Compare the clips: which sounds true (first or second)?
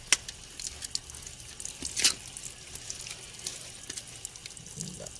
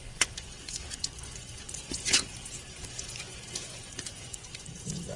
first